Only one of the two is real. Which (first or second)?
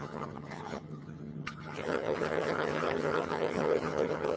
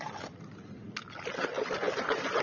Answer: second